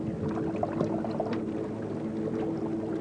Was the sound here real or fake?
real